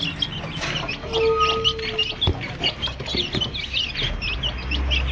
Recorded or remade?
recorded